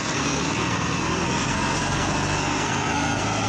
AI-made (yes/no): yes